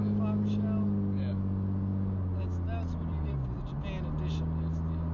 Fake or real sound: real